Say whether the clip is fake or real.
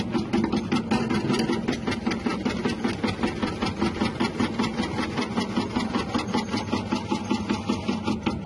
real